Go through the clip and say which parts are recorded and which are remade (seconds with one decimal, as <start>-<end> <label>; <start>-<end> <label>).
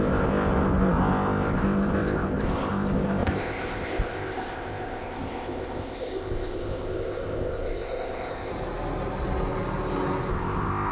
0.0-8.5 remade; 8.5-10.3 recorded; 10.3-10.9 remade